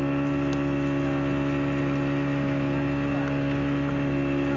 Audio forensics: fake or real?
real